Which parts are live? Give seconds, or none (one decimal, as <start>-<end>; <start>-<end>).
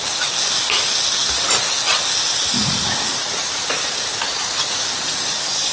0.0-5.7